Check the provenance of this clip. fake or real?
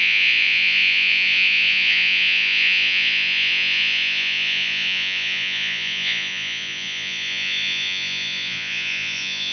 fake